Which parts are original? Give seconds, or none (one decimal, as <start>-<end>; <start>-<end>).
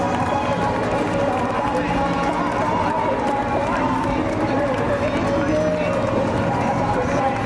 0.0-3.6; 4.3-7.5